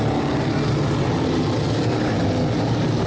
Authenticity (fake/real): real